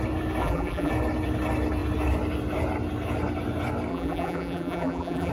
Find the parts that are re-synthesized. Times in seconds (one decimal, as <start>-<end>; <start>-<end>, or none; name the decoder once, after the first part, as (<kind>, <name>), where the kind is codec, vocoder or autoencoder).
0.4-0.9 (vocoder, BigVGAN v2); 3.9-5.3